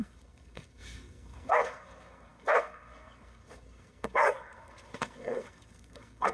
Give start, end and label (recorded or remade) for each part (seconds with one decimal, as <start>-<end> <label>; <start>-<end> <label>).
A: 0.0-6.3 remade